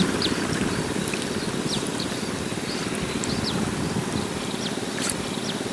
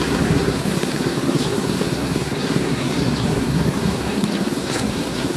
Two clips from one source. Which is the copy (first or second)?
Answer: second